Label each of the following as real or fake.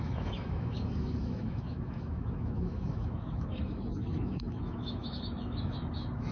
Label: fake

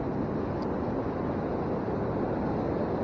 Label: real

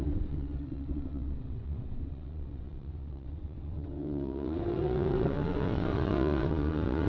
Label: fake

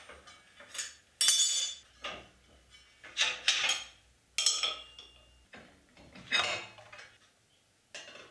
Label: real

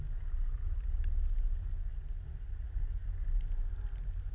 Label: real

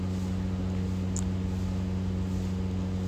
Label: real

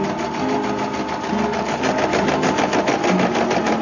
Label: real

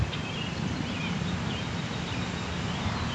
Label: real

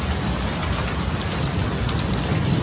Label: real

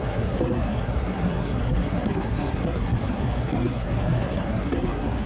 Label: fake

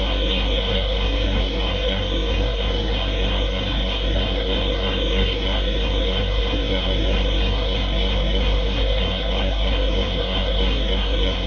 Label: fake